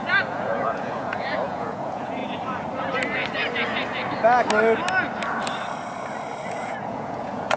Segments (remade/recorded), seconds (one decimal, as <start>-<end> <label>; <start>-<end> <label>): 0.0-2.2 remade; 2.2-6.5 recorded; 6.5-7.6 remade